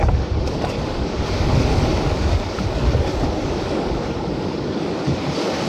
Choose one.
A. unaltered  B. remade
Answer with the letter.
B